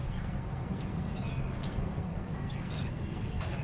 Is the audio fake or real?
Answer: fake